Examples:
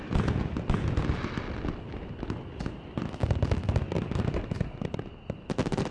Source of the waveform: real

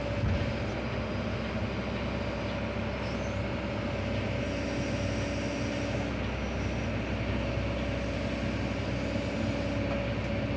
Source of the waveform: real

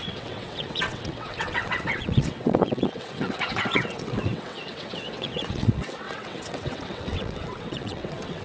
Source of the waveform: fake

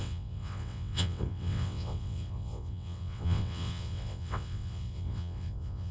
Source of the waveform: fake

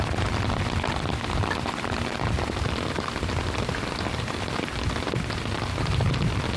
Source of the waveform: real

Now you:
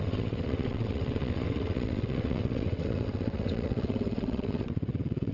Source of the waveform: fake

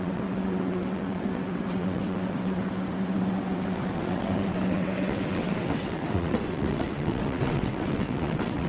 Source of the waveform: fake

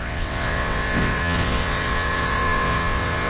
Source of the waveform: fake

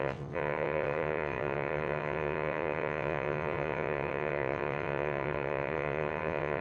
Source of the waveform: fake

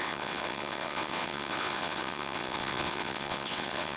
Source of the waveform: fake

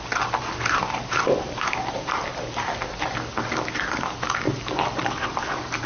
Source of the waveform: real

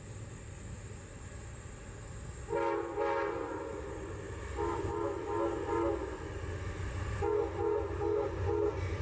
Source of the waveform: real